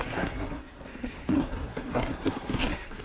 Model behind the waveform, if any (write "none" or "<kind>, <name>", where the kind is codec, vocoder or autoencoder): codec, SNAC